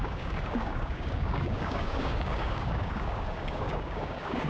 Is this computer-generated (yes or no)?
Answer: yes